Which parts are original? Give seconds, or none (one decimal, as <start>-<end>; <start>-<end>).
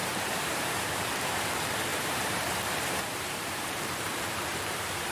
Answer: 1.3-1.9